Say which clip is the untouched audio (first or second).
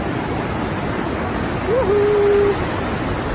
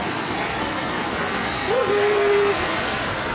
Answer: first